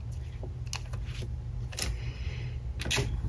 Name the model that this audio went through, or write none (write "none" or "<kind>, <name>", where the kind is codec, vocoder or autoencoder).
none